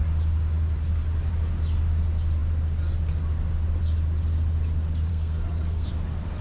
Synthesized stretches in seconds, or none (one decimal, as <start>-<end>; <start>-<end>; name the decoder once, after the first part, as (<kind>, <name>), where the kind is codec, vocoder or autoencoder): 5.1-5.9 (codec, SNAC)